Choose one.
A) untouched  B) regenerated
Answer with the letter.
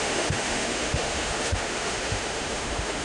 B